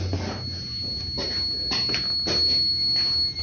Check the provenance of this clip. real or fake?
real